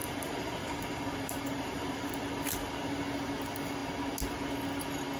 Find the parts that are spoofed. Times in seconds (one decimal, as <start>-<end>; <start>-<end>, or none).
0.0-2.1